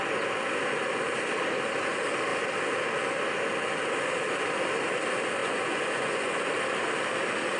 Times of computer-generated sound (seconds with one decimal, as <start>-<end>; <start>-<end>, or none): 5.4-6.5